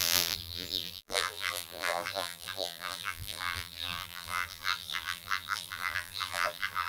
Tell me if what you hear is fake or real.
fake